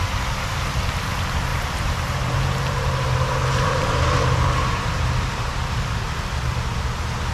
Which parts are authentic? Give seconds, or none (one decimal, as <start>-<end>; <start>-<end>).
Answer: 0.0-1.5; 5.9-7.3